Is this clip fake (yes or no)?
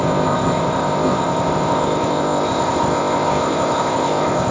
yes